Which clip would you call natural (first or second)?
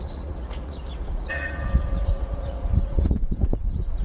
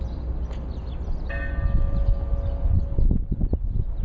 second